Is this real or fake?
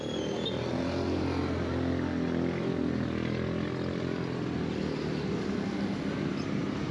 real